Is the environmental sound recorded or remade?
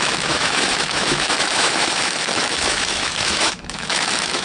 remade